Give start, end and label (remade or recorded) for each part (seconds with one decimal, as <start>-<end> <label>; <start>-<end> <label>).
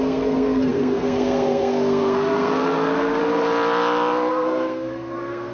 0.0-3.2 remade; 3.2-4.3 recorded; 4.3-5.5 remade